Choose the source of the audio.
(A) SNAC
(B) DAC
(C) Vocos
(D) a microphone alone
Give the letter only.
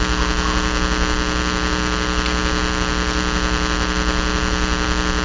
D